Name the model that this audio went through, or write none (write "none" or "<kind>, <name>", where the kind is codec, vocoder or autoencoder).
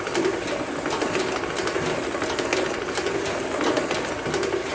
none